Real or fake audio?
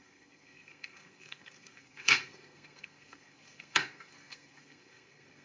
fake